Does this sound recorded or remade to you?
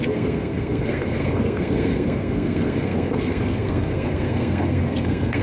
remade